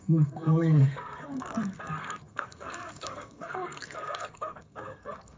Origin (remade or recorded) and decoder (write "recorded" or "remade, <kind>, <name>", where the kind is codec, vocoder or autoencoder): remade, codec, SNAC